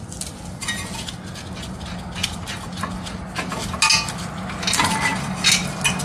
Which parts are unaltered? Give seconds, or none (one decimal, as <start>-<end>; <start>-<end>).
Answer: 0.0-6.0